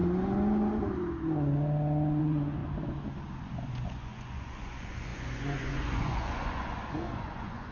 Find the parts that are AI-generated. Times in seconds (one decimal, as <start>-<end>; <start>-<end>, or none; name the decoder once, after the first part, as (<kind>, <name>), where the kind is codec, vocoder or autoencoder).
2.2-2.6 (vocoder, Vocos); 3.4-7.7